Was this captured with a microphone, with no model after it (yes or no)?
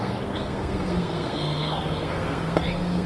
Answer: no